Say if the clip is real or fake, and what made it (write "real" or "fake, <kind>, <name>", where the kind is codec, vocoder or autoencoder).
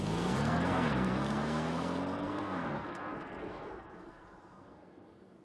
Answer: fake, codec, SNAC